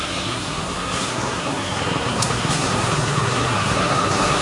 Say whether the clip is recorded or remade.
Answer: remade